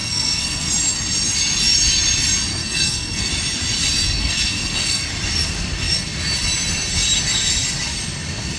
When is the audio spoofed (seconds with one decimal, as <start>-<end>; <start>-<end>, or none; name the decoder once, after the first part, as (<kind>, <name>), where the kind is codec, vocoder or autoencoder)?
0.0-0.7 (codec, SNAC); 2.6-3.3; 4.2-5.1